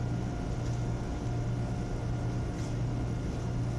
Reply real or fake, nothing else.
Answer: real